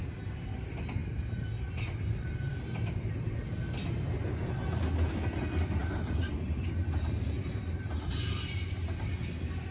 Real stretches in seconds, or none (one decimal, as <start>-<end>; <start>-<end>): 0.0-5.8; 9.1-9.7